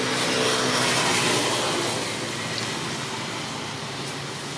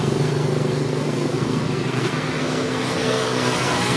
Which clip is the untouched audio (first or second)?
first